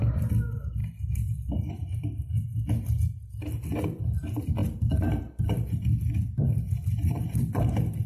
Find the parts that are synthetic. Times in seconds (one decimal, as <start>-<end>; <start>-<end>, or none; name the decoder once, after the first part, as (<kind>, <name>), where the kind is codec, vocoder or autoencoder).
0.8-1.7 (vocoder, BigVGAN v2); 4.6-8.1